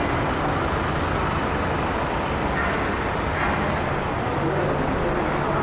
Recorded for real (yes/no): yes